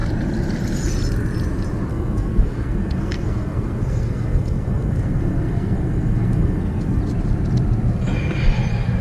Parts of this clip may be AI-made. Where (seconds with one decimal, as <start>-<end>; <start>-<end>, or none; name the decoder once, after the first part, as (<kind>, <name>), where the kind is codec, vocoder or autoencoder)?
1.9-7.0 (codec, SNAC)